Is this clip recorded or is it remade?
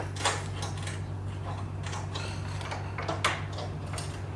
recorded